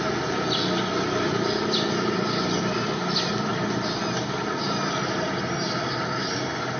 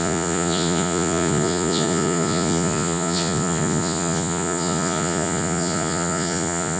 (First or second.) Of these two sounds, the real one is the first